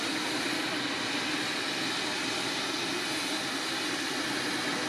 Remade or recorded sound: recorded